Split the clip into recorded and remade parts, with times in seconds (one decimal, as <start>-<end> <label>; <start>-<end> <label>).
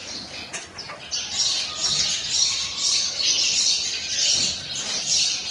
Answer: 0.0-0.9 remade; 0.9-5.5 recorded